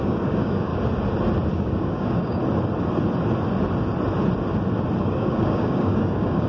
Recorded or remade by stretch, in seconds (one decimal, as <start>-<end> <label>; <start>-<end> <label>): 0.0-0.7 remade; 0.7-1.5 recorded; 1.5-2.4 remade; 2.4-5.0 recorded; 5.0-6.5 remade